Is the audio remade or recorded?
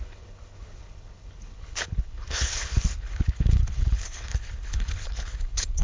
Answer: remade